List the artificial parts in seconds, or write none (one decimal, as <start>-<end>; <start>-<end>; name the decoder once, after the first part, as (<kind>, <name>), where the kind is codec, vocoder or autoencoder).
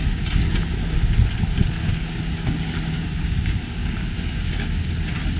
1.8-4.9 (codec, DAC)